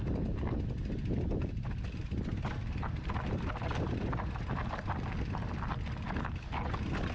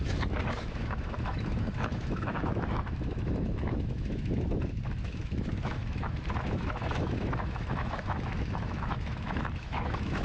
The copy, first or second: second